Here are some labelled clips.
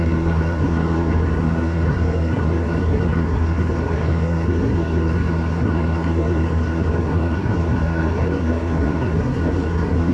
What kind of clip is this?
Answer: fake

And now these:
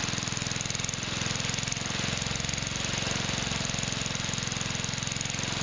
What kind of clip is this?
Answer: real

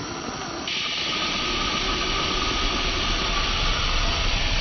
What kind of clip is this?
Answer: real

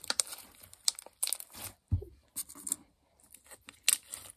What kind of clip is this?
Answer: real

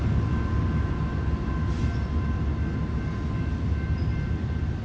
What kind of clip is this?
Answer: real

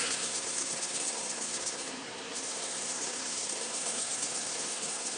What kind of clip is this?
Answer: fake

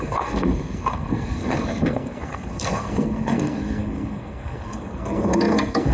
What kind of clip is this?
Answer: fake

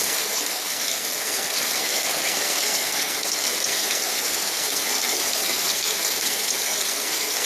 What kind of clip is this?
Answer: fake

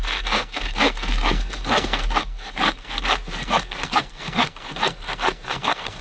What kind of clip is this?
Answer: fake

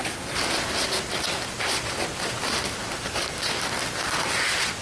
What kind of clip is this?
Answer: real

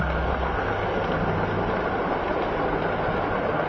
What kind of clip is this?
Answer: real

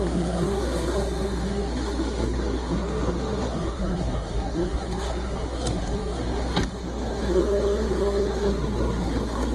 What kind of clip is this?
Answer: fake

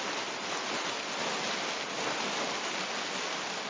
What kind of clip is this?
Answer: real